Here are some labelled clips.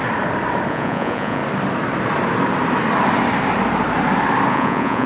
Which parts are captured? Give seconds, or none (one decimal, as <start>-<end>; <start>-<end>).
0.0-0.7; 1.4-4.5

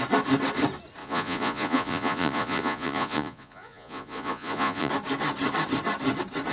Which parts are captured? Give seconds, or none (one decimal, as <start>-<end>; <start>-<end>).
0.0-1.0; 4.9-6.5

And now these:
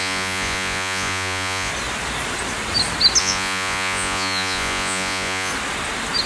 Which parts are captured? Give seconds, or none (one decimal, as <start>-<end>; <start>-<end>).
1.7-3.2; 5.5-6.3